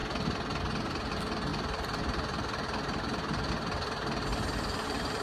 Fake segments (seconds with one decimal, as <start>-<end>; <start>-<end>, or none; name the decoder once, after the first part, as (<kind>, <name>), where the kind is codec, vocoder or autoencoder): 1.5-3.5 (vocoder, BigVGAN v2); 4.3-5.2